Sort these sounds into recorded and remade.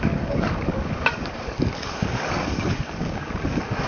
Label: remade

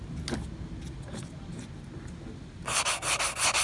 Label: recorded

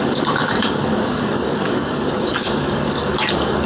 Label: remade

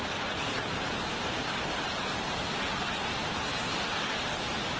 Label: remade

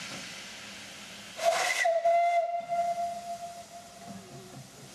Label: recorded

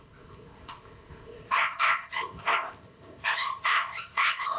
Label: remade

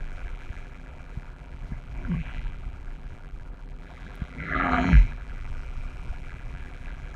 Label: remade